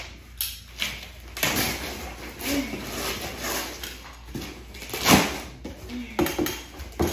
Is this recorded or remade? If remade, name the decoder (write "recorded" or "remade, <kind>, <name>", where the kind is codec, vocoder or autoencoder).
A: recorded